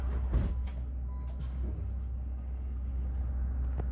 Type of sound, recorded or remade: recorded